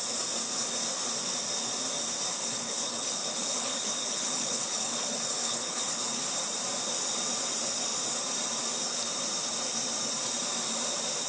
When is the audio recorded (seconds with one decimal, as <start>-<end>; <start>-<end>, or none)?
0.0-2.3; 6.0-11.3